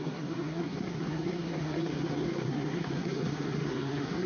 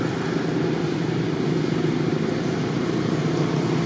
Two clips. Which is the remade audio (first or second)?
first